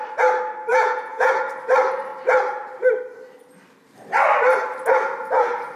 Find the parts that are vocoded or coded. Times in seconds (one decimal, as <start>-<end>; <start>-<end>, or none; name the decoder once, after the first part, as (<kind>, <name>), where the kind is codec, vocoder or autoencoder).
0.7-1.3 (vocoder, Vocos)

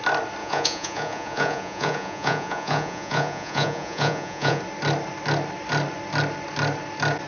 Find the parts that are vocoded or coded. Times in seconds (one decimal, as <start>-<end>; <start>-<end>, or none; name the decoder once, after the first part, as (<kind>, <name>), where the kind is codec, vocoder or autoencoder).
0.4-4.6 (vocoder, Vocos)

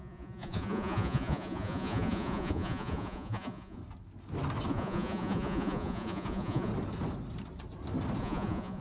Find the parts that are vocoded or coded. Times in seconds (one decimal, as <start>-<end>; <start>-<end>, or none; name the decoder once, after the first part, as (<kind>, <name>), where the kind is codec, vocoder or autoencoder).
0.0-3.8 (vocoder, Vocos); 4.7-6.7; 8.2-8.8

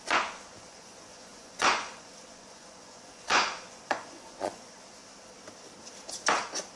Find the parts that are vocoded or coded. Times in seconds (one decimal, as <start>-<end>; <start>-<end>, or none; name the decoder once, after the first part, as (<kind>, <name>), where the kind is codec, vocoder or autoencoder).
0.0-5.0 (vocoder, Vocos)

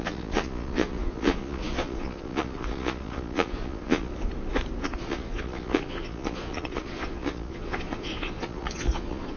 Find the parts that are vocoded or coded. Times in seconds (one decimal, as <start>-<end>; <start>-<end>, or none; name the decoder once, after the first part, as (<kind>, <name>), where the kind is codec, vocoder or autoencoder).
0.0-4.1 (vocoder, Vocos); 4.8-9.4